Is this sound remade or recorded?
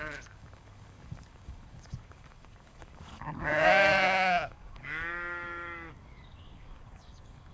remade